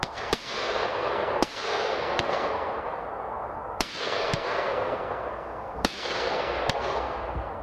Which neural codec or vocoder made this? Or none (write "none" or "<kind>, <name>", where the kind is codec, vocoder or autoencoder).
codec, SNAC